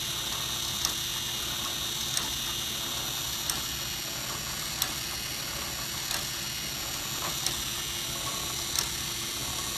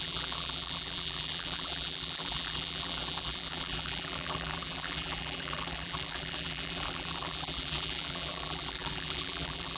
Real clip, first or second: first